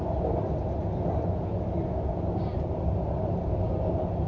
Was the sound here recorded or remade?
recorded